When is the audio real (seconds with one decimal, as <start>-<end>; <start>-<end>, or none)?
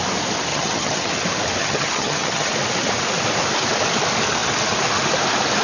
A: 0.0-0.5; 1.1-1.6; 2.5-5.6